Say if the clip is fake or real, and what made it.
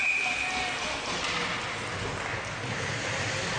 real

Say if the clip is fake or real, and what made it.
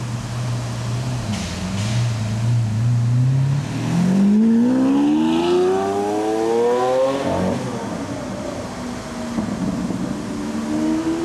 real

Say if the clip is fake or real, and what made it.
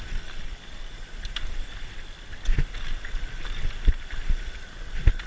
real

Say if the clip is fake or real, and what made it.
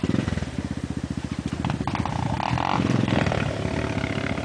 real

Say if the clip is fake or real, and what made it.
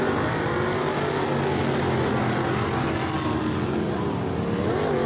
real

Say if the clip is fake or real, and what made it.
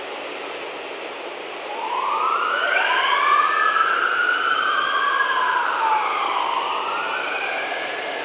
real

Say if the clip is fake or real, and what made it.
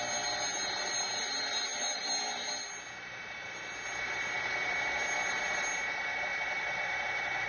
real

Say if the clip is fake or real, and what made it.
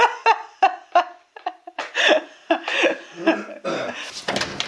real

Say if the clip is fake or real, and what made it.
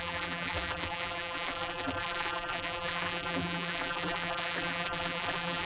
fake, vocoder, BigVGAN v2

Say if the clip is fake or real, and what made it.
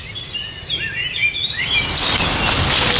real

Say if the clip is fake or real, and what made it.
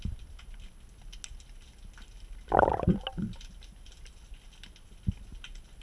real